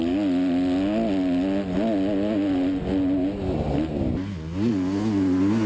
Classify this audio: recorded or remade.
recorded